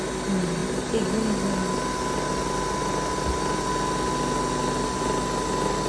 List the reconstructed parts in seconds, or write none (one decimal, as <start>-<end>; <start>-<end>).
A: none